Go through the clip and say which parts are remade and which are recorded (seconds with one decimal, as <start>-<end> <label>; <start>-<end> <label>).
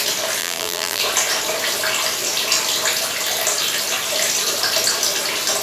0.0-0.4 recorded; 0.4-1.0 remade; 1.0-5.6 recorded